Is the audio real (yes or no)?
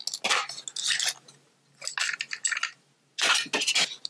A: yes